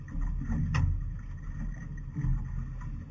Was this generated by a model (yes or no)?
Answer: no